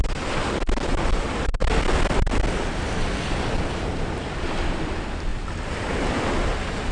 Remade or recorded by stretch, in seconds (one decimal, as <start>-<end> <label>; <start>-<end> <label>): 0.0-6.9 recorded